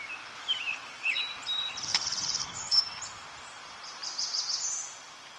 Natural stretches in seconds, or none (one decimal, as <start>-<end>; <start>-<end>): 0.0-0.7; 1.2-1.9; 2.8-5.4